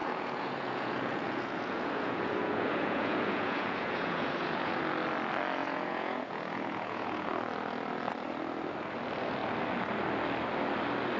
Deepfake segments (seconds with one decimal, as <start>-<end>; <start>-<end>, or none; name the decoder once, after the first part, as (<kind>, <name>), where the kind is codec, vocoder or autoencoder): 0.0-4.8 (vocoder, Vocos); 5.6-7.3